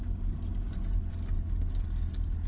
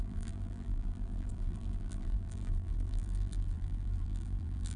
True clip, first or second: first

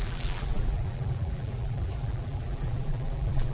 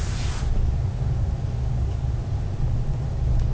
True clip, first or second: second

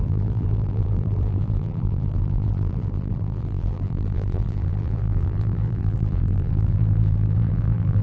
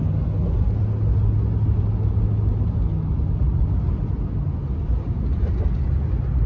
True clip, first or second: second